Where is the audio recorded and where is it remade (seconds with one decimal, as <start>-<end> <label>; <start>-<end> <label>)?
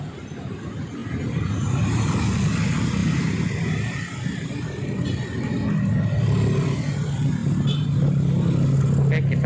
0.0-1.0 recorded; 1.0-2.2 remade; 2.2-3.0 recorded; 3.0-5.1 remade; 5.1-9.5 recorded